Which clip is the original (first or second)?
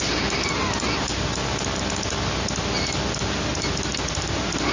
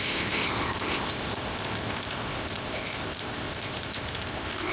first